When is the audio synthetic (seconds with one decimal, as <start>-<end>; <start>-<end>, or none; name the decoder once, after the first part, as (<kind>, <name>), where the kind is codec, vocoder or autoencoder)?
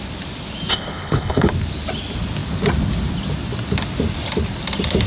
0.7-1.5 (codec, HILCodec)